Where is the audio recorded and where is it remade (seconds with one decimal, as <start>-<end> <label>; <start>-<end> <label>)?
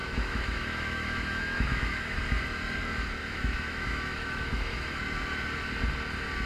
0.0-2.2 remade; 2.2-3.2 recorded; 3.2-4.9 remade; 4.9-6.5 recorded